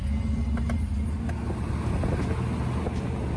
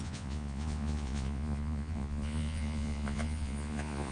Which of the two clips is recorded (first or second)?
first